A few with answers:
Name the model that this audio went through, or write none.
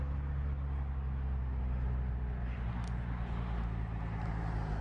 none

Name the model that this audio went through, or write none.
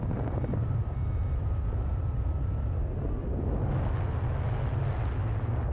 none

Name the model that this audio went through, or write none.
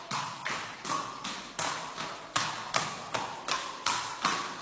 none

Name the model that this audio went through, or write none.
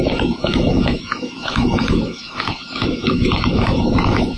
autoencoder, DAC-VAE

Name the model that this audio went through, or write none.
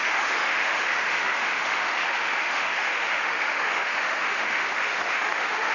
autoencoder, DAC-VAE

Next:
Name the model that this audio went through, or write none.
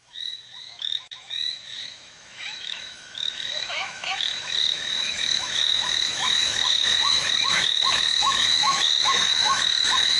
autoencoder, DAC-VAE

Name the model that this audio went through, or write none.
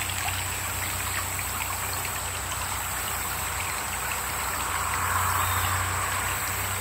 none